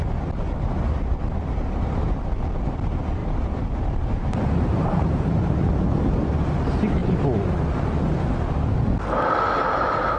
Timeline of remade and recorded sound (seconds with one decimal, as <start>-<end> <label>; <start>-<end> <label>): 0.0-3.2 recorded; 3.2-5.7 remade; 5.7-10.2 recorded